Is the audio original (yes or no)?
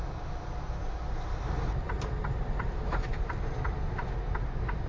yes